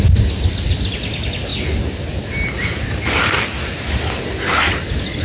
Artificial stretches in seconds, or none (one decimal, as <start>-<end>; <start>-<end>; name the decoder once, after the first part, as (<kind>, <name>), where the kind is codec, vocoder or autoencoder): none